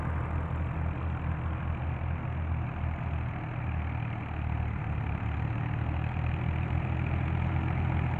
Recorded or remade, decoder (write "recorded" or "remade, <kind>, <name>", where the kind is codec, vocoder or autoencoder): recorded